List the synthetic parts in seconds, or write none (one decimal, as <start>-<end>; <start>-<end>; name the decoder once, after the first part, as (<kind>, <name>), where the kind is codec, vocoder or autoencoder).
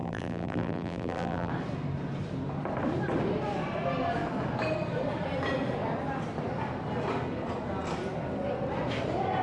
0.0-1.5 (vocoder, BigVGAN v2)